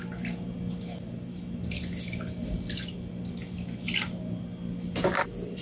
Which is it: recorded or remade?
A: recorded